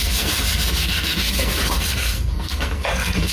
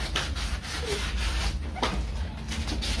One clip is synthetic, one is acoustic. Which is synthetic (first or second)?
first